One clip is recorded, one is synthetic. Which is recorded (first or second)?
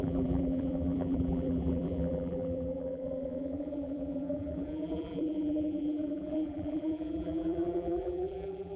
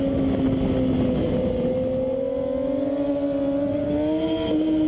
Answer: second